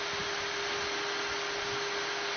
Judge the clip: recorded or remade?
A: recorded